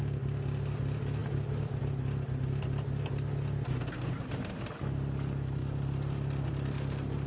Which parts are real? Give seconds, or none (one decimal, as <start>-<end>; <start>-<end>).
0.0-7.3